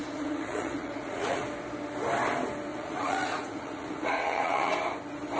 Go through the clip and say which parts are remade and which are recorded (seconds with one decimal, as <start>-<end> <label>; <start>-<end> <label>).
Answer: 0.0-1.4 remade; 1.4-2.7 recorded; 2.7-4.7 remade; 4.7-5.4 recorded